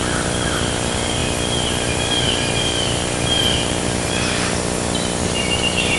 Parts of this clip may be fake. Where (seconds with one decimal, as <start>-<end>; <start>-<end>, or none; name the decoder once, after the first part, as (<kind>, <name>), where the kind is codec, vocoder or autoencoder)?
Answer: 0.0-6.0 (vocoder, BigVGAN v2)